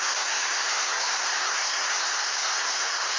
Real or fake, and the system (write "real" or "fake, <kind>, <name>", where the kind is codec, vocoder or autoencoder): fake, codec, SNAC